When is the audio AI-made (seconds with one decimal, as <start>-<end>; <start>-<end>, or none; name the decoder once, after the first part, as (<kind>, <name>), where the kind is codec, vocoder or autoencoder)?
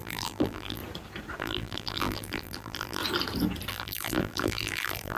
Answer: 0.0-0.8 (vocoder, BigVGAN v2); 1.4-3.0; 3.7-5.2